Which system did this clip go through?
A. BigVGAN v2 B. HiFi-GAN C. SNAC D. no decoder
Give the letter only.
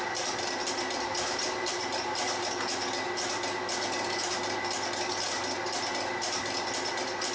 D